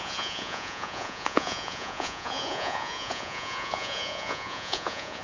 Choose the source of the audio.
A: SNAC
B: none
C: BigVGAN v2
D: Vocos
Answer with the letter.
D